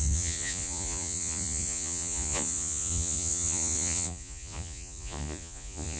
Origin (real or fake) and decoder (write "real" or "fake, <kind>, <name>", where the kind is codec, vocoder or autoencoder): fake, vocoder, Vocos